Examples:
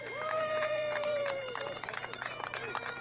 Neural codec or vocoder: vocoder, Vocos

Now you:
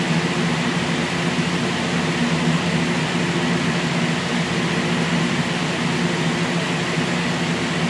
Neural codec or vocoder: none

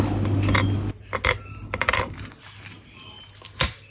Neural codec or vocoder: none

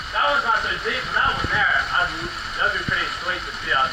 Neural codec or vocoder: none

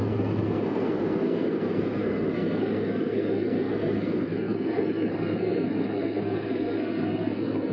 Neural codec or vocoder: codec, SNAC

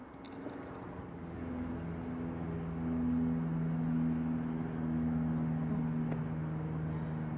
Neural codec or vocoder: none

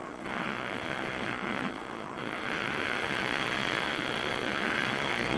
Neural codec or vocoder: vocoder, Vocos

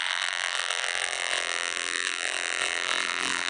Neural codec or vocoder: vocoder, BigVGAN v2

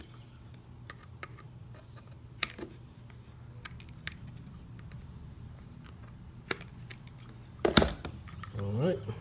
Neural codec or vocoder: none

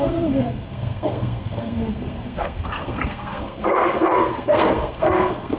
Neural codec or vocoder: codec, SNAC